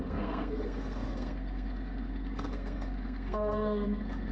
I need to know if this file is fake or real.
fake